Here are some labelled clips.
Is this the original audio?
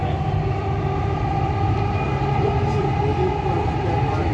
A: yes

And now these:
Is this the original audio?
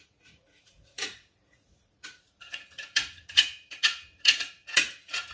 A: no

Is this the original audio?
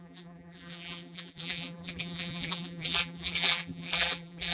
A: no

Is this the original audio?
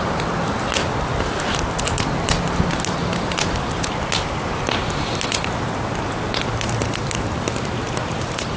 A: yes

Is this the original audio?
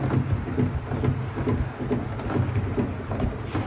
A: yes